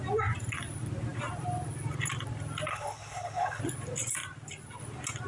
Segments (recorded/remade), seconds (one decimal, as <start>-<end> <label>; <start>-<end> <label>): 0.0-2.7 recorded; 2.7-3.6 remade; 3.6-5.3 recorded